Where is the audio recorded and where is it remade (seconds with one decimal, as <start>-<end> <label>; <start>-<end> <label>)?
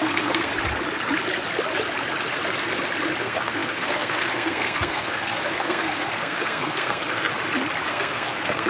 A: 0.0-0.5 remade; 0.5-3.2 recorded; 3.2-7.3 remade; 7.3-7.9 recorded; 7.9-8.7 remade